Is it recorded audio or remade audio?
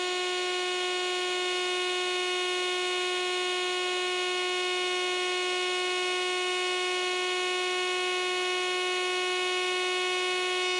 recorded